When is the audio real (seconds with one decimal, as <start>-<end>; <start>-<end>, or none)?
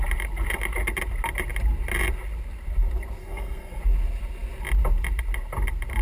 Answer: 0.0-3.2; 3.8-6.0